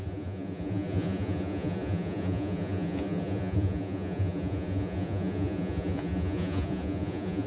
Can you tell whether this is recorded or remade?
remade